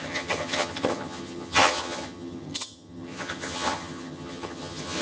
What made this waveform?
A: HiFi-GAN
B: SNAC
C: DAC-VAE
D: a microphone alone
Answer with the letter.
A